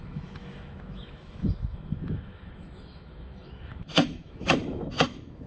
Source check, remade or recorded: remade